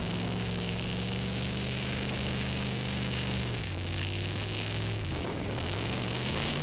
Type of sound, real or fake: fake